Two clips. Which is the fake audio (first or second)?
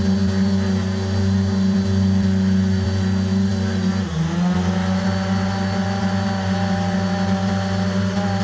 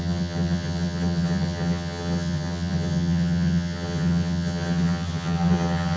second